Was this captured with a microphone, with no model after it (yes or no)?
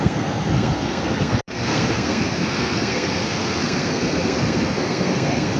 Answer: no